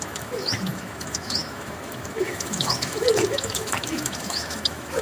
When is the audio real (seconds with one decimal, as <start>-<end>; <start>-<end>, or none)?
none